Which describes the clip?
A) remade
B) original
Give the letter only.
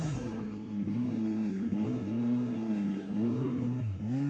A